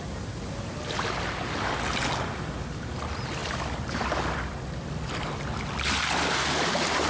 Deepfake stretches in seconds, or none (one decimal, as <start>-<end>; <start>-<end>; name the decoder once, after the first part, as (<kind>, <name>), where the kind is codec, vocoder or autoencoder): none